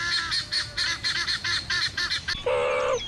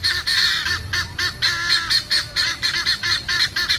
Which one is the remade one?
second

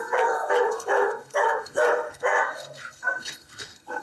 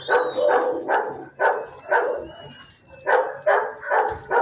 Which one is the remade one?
first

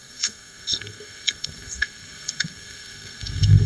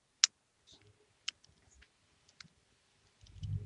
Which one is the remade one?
first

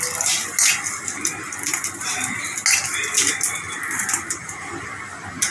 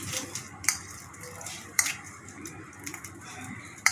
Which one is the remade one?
second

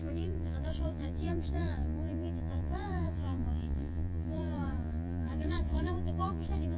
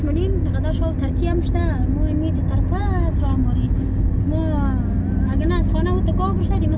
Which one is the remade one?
first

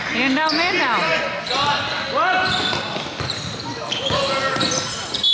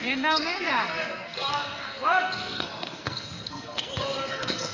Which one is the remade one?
second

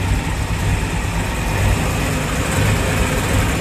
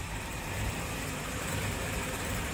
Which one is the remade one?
second